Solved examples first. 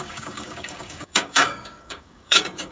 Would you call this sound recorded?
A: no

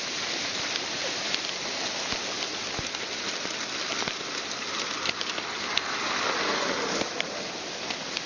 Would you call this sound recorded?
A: yes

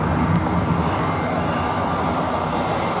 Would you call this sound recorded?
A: yes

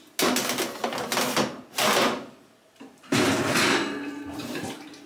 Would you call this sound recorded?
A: yes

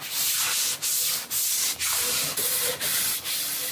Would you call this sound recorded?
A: yes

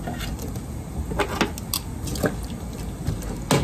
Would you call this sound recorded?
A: yes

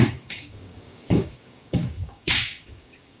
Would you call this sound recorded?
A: no